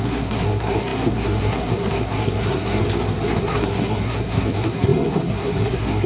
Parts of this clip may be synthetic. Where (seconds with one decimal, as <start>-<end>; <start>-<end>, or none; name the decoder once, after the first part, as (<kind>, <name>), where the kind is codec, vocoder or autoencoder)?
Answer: 0.0-2.8 (codec, SNAC); 3.4-6.1